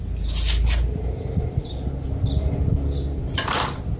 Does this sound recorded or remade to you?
recorded